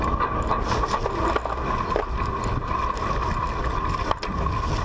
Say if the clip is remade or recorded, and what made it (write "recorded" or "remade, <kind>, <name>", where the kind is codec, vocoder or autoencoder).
recorded